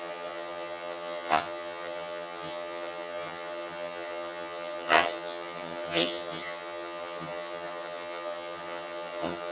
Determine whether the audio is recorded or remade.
remade